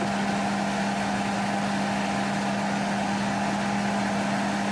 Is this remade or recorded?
recorded